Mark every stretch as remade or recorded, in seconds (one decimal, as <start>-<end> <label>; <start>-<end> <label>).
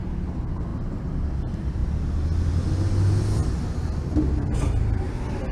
0.0-5.5 recorded